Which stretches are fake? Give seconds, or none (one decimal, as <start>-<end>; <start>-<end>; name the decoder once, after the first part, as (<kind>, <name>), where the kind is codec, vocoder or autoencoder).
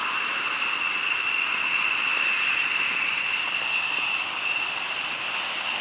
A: none